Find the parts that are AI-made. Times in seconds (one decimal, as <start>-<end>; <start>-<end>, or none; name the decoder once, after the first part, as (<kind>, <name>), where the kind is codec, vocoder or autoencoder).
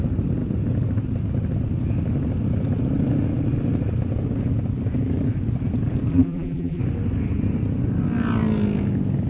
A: 6.1-6.8 (vocoder, BigVGAN v2)